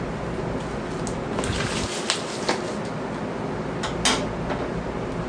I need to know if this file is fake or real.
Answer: real